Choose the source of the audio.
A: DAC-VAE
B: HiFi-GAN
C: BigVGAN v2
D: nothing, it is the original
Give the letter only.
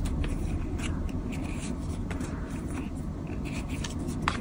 C